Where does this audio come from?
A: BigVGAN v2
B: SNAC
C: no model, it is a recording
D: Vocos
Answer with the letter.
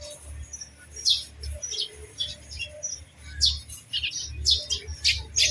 C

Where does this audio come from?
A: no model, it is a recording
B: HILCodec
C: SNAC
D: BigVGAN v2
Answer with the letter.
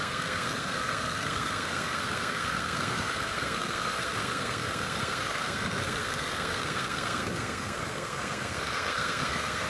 C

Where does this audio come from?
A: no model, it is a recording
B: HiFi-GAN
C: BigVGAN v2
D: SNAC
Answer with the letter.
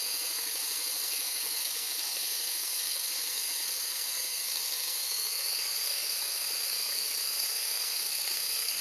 D